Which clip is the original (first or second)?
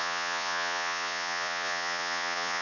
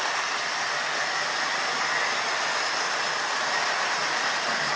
second